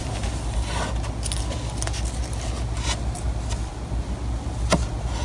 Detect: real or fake real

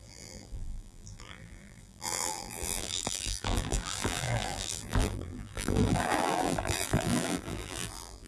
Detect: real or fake fake